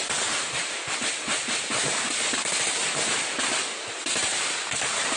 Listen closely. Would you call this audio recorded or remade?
recorded